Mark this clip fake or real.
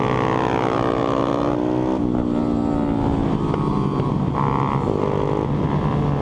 real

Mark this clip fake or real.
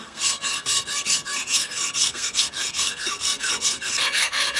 fake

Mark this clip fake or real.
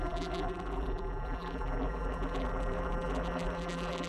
fake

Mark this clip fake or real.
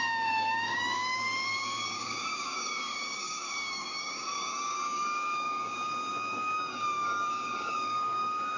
fake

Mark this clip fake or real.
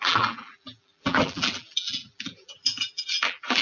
fake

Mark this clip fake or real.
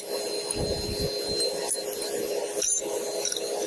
real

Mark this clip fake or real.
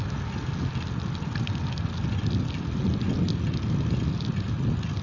real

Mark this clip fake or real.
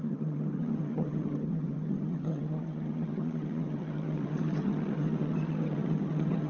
fake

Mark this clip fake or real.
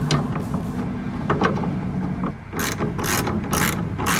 real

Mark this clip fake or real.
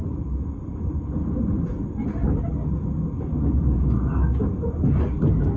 real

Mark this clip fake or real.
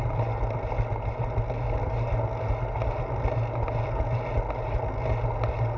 real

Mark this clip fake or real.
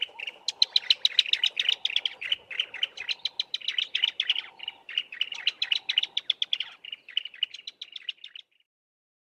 real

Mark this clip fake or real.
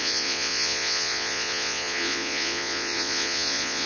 fake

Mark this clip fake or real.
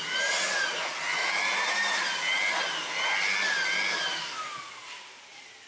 real